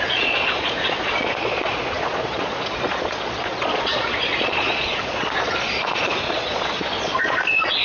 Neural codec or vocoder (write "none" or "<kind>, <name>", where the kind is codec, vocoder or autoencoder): vocoder, Vocos